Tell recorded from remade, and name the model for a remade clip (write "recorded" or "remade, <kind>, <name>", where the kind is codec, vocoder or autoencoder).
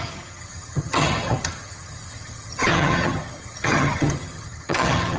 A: remade, vocoder, HiFi-GAN